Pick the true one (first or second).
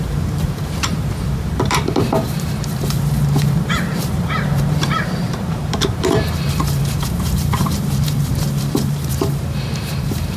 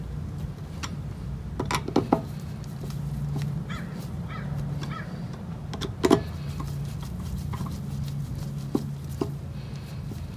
second